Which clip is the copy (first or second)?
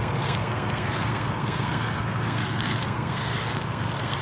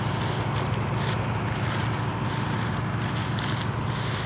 first